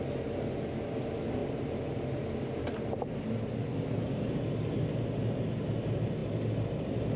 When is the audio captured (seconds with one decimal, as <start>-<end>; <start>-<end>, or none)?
0.0-7.2